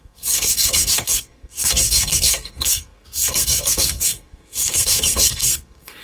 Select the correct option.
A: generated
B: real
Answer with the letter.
A